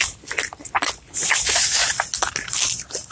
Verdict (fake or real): real